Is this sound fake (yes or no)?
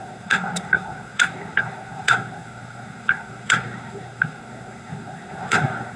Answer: yes